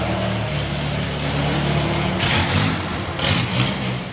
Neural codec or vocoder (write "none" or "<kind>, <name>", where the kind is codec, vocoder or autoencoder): none